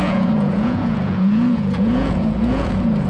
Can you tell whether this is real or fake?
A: fake